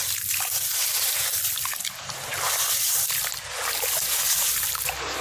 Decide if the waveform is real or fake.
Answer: real